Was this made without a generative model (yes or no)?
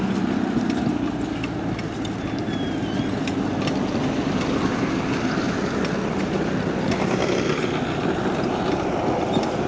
yes